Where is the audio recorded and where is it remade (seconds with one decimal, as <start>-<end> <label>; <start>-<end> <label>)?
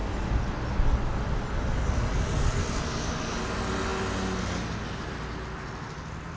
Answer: 0.0-6.4 recorded